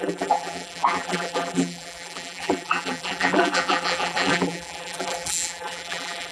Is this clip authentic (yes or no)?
no